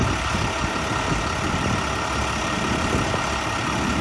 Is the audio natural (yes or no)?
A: yes